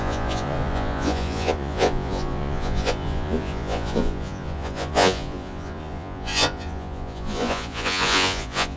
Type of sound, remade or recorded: remade